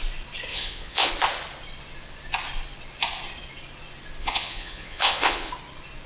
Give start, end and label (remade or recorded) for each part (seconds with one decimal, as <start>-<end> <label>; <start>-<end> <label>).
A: 0.0-0.5 recorded; 0.5-1.1 remade; 1.1-4.2 recorded; 4.2-5.5 remade; 5.5-6.1 recorded